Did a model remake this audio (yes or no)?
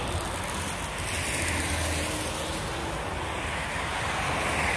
no